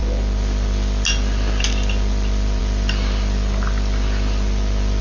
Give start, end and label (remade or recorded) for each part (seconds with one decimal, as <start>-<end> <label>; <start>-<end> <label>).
0.0-5.0 recorded